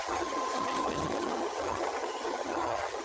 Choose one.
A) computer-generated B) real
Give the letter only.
A